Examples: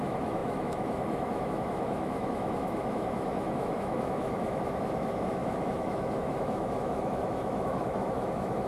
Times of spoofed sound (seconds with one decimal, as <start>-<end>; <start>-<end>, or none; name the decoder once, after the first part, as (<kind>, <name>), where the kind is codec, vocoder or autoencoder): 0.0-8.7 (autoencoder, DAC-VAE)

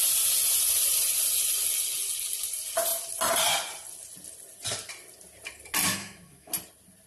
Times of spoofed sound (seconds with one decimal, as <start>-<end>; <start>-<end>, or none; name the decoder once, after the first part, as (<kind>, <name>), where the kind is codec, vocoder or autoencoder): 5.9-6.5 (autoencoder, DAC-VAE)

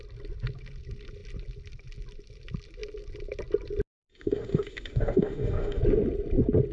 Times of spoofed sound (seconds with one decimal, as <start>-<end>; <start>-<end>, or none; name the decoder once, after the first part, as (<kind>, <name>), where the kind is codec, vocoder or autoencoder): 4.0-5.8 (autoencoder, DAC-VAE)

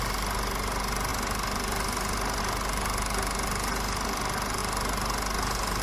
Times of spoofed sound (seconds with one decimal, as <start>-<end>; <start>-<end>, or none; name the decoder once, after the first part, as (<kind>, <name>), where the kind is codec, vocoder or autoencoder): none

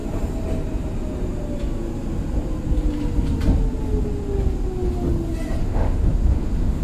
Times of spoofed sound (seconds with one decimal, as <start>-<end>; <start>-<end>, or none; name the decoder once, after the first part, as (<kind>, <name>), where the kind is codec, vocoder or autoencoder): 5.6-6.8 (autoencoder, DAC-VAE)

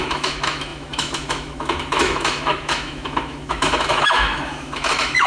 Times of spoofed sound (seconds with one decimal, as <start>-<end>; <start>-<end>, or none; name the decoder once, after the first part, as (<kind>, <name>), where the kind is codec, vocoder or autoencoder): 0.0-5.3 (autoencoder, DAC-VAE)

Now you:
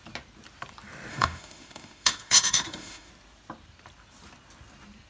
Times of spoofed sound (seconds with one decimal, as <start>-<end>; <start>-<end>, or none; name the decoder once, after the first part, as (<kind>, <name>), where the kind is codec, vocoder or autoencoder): 1.1-3.1 (autoencoder, DAC-VAE)

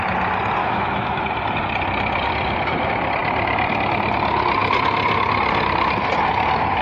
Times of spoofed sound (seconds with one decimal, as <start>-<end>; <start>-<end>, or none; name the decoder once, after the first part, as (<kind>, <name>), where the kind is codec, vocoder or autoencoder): 0.6-1.2 (autoencoder, DAC-VAE)